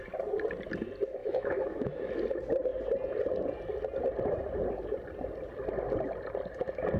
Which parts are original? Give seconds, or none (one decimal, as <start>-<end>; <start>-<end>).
0.0-1.2; 2.1-7.0

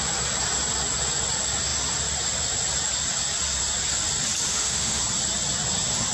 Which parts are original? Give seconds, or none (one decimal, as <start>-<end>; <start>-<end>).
0.0-4.5; 5.0-6.1

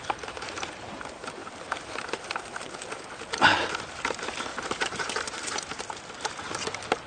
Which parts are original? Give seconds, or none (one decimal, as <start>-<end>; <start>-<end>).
0.0-4.5; 6.1-7.1

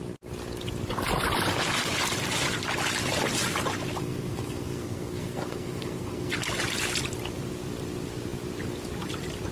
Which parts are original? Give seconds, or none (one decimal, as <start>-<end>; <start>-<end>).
0.0-4.0; 6.3-9.5

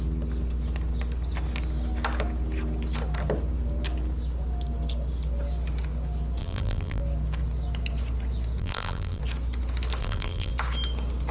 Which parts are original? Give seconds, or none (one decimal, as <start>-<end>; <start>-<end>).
0.0-6.4; 7.0-8.6; 9.2-10.0; 10.5-11.3

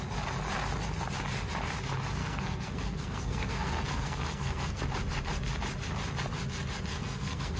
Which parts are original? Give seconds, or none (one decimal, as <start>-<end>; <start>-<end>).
0.0-2.2; 4.8-6.9

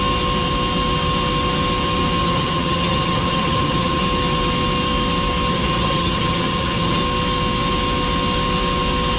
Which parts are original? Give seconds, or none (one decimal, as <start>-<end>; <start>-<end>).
0.0-2.2; 4.0-5.5; 7.0-9.2

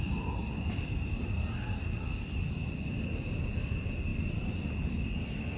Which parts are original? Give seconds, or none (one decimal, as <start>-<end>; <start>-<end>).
0.0-5.6